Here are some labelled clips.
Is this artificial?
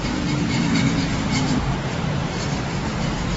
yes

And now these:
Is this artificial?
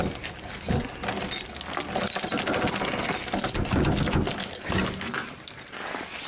no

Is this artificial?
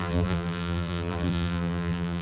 yes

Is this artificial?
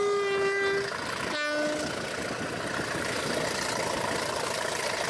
no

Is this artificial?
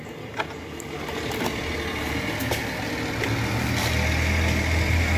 no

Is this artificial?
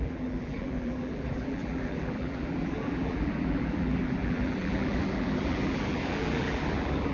yes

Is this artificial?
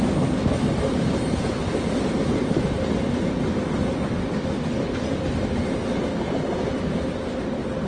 no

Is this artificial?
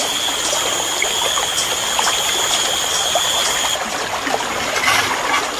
no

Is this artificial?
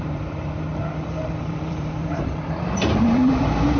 yes